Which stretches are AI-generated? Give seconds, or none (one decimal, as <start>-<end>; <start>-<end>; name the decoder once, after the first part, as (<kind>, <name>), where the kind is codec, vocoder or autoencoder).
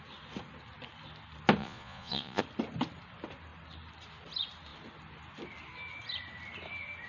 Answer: 1.6-2.4 (vocoder, Vocos)